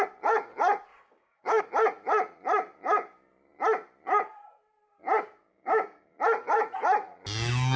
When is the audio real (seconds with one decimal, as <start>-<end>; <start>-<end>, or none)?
0.0-0.9; 1.6-5.5; 6.2-7.8